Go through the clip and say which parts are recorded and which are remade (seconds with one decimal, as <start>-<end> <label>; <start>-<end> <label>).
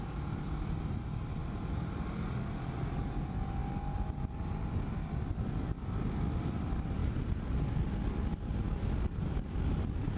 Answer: 0.0-10.2 recorded